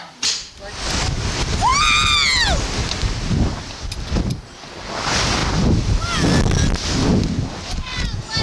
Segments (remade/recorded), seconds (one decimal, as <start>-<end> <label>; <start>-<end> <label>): 0.0-8.4 recorded